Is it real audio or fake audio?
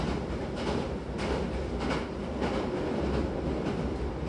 real